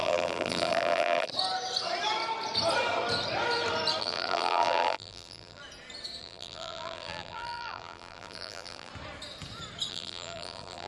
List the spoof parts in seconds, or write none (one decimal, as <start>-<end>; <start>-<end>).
0.0-1.3; 4.0-5.6; 6.2-8.9; 9.9-10.9